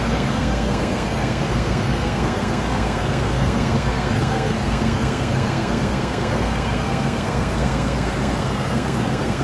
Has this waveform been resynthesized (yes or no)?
yes